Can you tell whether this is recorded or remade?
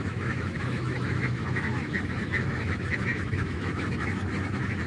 remade